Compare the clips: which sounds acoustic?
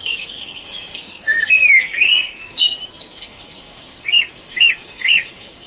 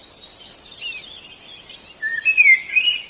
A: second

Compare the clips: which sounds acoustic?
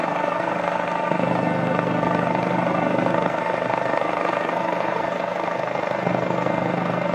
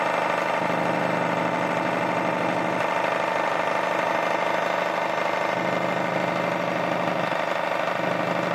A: second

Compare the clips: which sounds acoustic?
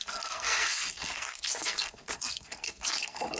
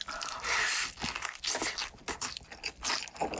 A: second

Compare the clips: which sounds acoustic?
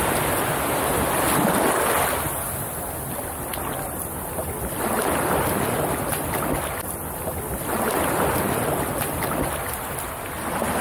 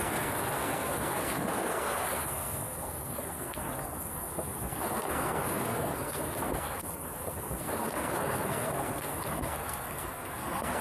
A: first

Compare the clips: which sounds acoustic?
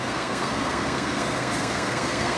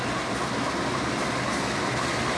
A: second